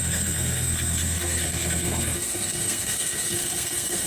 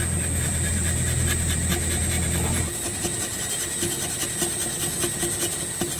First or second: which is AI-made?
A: first